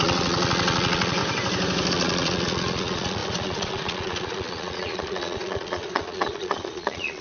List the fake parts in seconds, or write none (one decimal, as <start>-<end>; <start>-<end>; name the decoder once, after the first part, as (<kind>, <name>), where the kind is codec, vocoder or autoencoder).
0.0-1.2 (vocoder, Vocos); 1.9-7.2